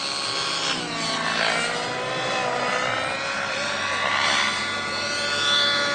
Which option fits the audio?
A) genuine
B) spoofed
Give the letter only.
A